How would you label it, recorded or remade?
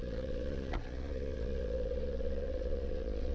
remade